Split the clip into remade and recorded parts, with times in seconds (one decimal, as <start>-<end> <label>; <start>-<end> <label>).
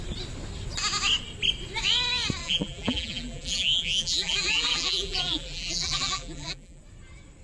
0.0-2.4 recorded; 2.4-6.8 remade; 6.8-7.4 recorded